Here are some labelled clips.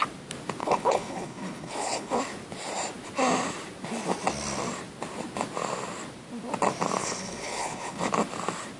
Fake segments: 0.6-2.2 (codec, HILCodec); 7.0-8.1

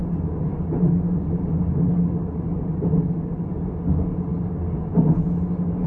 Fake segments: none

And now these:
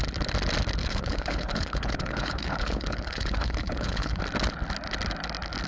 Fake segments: 0.8-4.2 (codec, HILCodec)

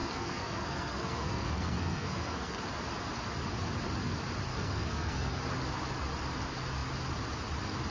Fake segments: 0.0-2.6 (codec, SNAC); 4.5-5.4

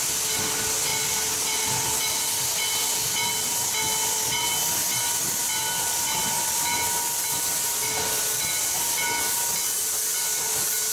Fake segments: none